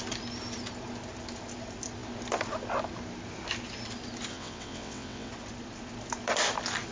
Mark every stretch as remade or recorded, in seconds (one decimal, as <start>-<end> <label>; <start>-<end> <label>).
0.0-4.3 recorded; 4.3-5.3 remade; 5.3-6.9 recorded